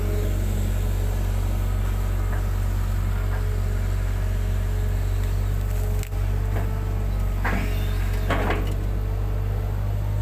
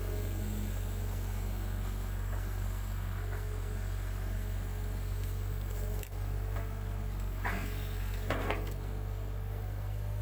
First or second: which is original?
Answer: first